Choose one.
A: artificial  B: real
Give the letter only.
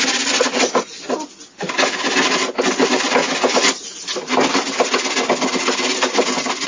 B